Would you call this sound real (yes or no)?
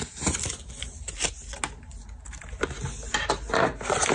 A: yes